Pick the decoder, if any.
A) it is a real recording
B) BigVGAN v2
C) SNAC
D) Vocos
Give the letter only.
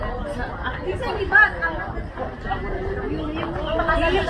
A